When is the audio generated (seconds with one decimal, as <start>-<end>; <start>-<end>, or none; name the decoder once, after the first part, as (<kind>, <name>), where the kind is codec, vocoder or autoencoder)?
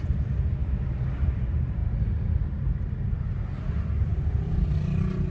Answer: none